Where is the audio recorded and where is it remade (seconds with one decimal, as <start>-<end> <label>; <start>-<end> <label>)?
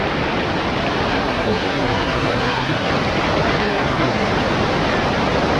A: 0.0-1.1 recorded; 1.1-2.9 remade; 2.9-3.6 recorded; 3.6-4.3 remade; 4.3-5.6 recorded